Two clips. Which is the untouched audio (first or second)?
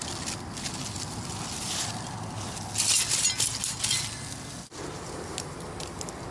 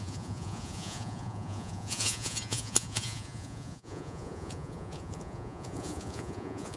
first